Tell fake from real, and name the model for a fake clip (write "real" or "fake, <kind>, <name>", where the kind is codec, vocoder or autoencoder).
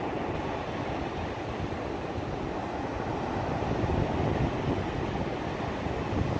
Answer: real